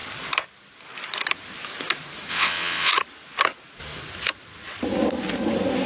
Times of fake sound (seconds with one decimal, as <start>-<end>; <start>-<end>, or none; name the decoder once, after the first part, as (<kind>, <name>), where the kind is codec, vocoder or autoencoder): 2.3-2.9 (vocoder, WaveNeXt)